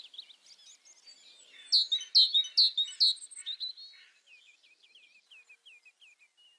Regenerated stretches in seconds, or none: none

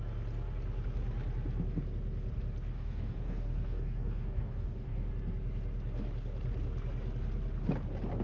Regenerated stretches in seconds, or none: 2.7-5.1 (codec, DAC)

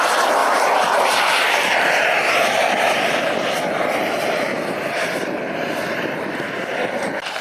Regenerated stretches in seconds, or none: 0.4-3.7 (vocoder, BigVGAN v2); 4.5-5.7

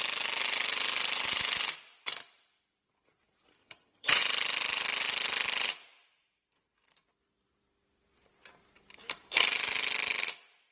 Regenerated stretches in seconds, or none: 3.6-4.2 (vocoder, HiFi-GAN)

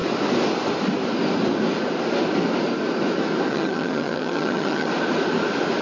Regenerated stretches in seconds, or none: 3.5-4.9 (vocoder, HiFi-GAN)

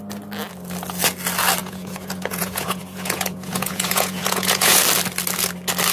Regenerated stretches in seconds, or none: 1.6-4.8 (vocoder, Vocos)

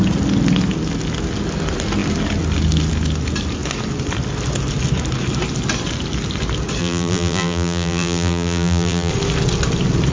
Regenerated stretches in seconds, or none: 6.8-9.1 (vocoder, BigVGAN v2)

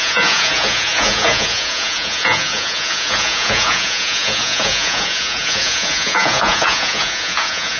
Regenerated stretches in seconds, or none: 0.0-7.8 (vocoder, Vocos)